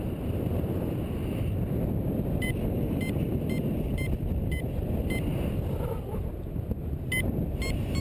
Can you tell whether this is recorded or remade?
recorded